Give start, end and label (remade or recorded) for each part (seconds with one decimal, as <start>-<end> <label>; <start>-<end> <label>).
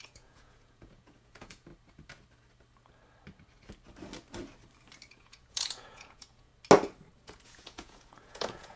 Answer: 0.0-1.7 remade; 1.7-5.1 recorded; 5.1-6.5 remade; 6.5-7.2 recorded; 7.2-8.8 remade